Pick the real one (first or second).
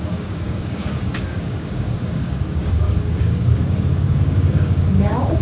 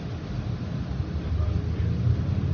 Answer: second